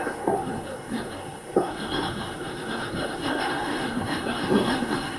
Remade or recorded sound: remade